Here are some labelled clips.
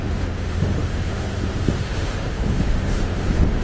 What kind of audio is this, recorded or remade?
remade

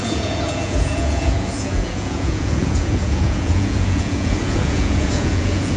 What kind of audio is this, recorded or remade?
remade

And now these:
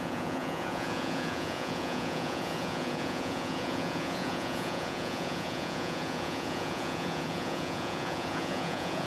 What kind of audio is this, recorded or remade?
remade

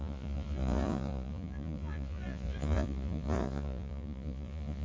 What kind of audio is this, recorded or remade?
remade